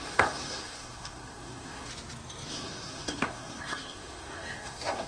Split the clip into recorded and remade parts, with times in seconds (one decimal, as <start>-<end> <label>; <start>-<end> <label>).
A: 0.0-1.9 remade; 1.9-2.5 recorded; 2.5-5.1 remade